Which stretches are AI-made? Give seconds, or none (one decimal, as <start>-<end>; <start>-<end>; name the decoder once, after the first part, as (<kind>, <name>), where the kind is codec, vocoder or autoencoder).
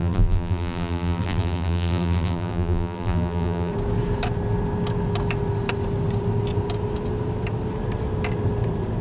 0.0-3.7 (vocoder, BigVGAN v2)